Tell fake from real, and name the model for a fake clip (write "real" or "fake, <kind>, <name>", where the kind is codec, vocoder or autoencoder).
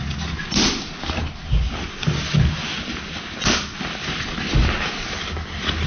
real